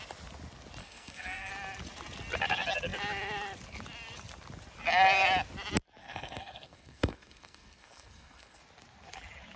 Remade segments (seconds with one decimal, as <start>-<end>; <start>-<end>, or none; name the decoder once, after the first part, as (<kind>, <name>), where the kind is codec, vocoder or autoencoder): 0.8-1.5 (codec, SNAC); 6.0-8.6